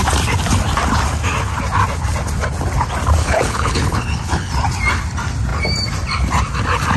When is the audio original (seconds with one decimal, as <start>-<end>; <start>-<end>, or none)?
0.0-3.2; 4.5-7.0